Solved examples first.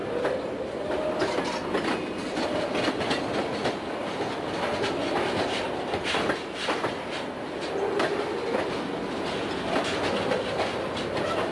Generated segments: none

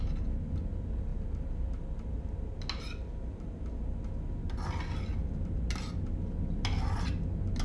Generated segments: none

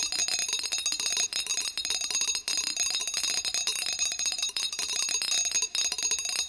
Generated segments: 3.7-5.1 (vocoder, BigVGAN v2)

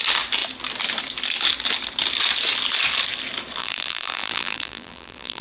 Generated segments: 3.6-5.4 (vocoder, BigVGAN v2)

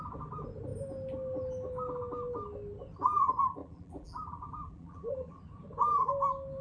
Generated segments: 3.6-5.4 (vocoder, BigVGAN v2)

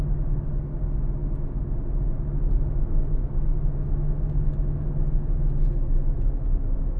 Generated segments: none

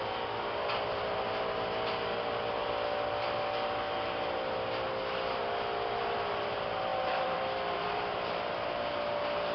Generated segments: 6.9-8.5 (vocoder, BigVGAN v2)